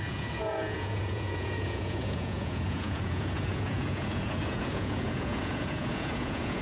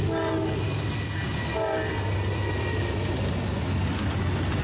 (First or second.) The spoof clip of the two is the first